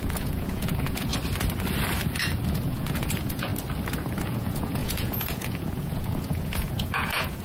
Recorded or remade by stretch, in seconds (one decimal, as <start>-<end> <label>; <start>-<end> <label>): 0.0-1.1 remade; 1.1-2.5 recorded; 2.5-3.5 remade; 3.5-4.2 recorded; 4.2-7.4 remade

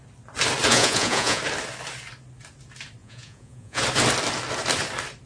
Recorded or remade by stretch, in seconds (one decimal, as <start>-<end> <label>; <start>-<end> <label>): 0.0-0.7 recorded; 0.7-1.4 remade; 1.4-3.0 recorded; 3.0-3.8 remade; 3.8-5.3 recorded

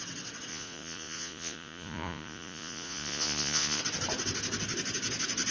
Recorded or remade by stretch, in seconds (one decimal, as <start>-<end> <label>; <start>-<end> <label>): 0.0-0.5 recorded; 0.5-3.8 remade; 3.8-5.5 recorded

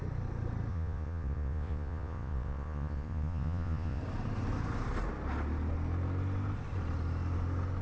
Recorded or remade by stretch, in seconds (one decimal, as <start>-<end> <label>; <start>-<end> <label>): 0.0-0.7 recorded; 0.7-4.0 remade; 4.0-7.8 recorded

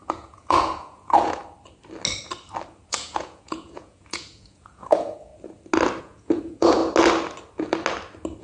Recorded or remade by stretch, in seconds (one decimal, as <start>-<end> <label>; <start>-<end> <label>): 0.0-1.4 remade; 1.4-2.9 recorded; 2.9-5.3 remade; 5.3-6.0 recorded; 6.0-6.8 remade; 6.8-8.4 recorded

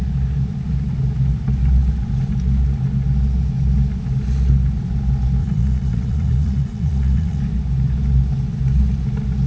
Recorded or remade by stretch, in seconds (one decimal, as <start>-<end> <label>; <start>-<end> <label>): 0.0-5.4 recorded; 5.4-7.4 remade; 7.4-9.5 recorded

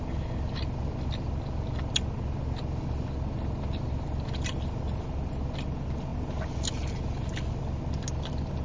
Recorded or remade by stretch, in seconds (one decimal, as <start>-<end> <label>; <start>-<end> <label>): 0.0-8.6 recorded

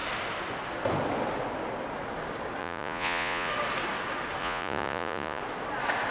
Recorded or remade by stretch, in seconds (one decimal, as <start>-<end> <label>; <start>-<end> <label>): 0.0-2.6 recorded; 2.6-3.5 remade; 3.5-4.4 recorded; 4.4-5.4 remade; 5.4-6.1 recorded